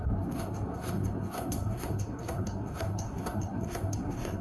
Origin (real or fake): fake